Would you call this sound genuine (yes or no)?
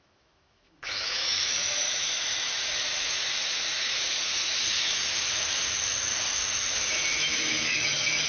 no